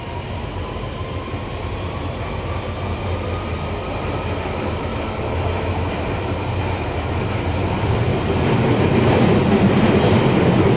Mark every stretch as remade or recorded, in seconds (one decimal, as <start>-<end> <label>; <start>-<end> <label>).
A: 0.0-10.8 recorded